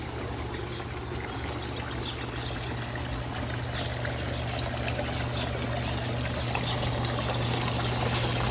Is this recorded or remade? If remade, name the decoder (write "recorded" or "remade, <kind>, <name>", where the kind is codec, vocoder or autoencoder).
recorded